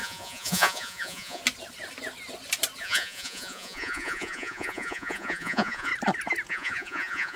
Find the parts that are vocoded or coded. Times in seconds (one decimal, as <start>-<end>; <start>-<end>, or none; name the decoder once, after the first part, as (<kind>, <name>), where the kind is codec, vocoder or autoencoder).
0.0-1.4 (vocoder, Vocos); 2.8-5.9; 6.5-7.4